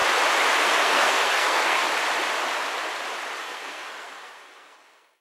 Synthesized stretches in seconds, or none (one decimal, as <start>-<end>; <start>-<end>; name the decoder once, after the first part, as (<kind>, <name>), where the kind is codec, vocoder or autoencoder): 0.6-1.8 (codec, SNAC); 3.4-5.2